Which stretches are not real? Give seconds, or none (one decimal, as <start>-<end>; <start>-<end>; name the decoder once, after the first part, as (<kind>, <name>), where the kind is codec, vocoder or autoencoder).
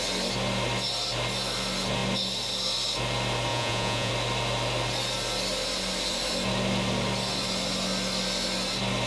3.5-4.1 (vocoder, Vocos)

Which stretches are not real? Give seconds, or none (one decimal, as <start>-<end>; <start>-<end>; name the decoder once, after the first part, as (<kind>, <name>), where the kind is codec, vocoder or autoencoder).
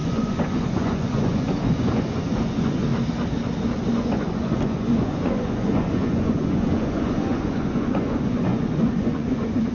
0.0-2.9 (vocoder, Vocos); 4.0-9.7